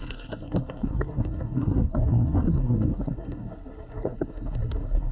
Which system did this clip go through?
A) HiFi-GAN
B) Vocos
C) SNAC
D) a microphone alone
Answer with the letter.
C